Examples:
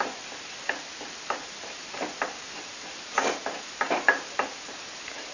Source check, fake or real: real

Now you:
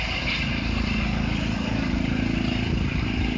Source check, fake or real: real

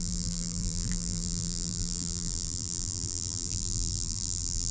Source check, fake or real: fake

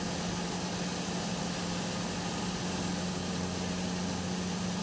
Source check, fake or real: real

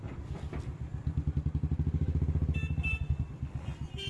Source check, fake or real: real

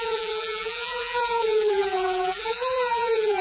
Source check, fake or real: fake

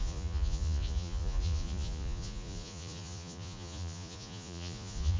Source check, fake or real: fake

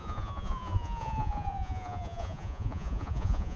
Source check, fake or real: fake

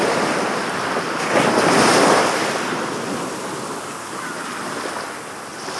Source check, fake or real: real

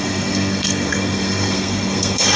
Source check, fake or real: fake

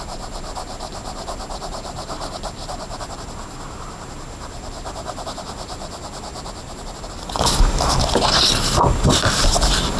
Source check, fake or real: real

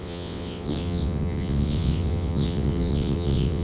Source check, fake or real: fake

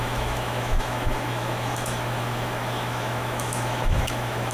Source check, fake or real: fake